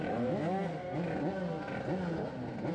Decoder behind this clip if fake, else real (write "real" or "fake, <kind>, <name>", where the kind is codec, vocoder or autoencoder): real